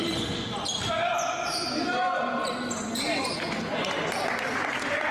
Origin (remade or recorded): recorded